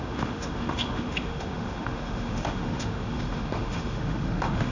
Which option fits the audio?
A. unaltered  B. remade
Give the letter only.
B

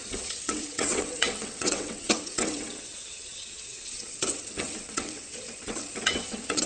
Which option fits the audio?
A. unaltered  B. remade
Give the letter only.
B